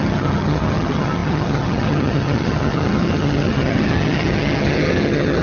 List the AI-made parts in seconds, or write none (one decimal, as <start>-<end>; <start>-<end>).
0.0-5.4